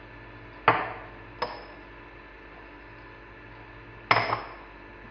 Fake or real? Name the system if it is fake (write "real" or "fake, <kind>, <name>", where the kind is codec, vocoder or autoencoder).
real